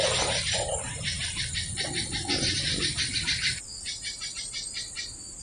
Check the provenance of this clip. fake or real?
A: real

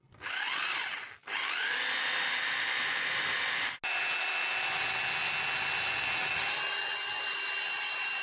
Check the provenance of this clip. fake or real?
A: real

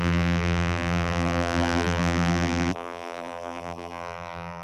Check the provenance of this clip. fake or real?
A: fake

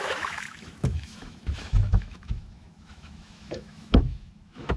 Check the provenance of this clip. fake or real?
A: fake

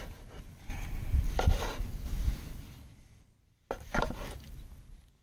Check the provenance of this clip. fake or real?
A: real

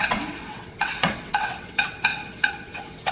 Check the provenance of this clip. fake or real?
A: fake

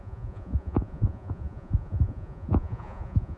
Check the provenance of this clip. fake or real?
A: fake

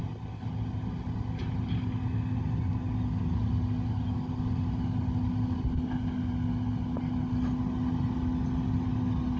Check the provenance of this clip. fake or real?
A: real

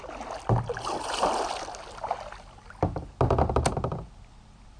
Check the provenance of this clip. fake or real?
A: real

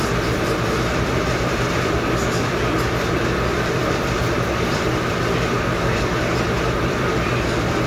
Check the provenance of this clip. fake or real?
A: fake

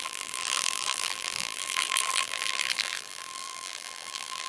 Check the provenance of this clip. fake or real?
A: fake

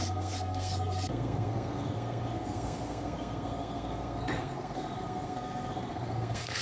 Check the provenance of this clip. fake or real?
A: fake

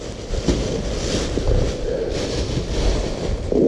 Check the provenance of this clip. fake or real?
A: real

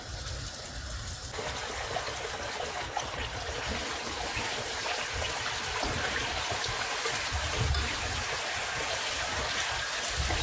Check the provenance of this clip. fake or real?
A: real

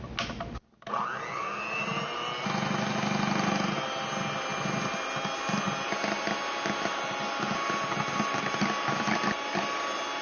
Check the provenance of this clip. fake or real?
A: real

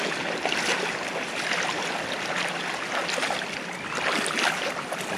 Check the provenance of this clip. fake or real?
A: real